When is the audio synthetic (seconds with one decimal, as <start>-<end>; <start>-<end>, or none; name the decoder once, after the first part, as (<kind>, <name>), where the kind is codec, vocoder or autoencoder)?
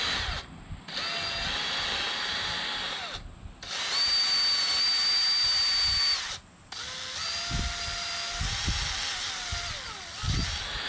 none